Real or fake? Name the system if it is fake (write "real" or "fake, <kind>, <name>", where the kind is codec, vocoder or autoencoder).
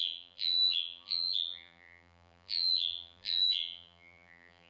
fake, vocoder, BigVGAN v2